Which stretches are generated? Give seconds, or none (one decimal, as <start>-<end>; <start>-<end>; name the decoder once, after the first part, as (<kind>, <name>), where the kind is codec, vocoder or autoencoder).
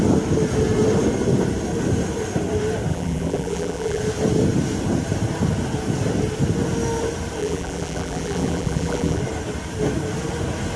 2.9-4.0 (vocoder, BigVGAN v2); 7.4-9.2